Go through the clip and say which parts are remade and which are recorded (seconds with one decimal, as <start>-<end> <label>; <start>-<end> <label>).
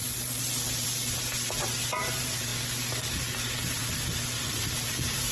0.0-2.5 remade; 2.5-3.2 recorded; 3.2-3.8 remade; 3.8-4.5 recorded; 4.5-5.3 remade